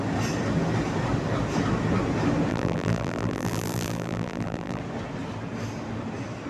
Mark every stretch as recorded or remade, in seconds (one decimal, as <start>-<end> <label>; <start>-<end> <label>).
0.0-2.5 recorded; 2.5-4.8 remade; 4.8-6.5 recorded